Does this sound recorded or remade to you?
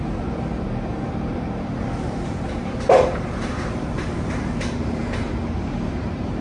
remade